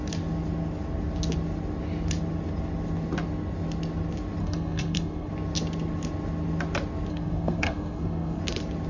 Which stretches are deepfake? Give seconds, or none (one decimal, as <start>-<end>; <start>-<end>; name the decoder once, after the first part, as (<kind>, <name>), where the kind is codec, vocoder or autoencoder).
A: 4.4-5.3 (codec, SNAC); 7.1-8.4